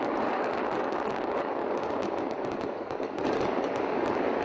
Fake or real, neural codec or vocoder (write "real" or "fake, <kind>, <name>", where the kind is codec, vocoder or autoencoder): fake, codec, DAC